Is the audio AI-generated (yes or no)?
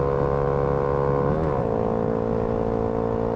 no